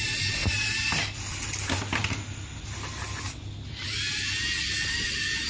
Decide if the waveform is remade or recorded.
recorded